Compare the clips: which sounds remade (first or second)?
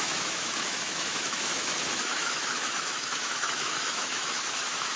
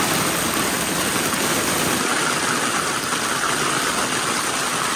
first